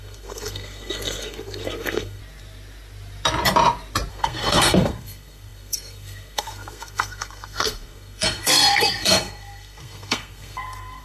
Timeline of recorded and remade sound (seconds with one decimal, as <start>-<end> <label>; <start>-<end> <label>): 0.0-2.2 remade; 2.2-4.1 recorded; 4.1-11.0 remade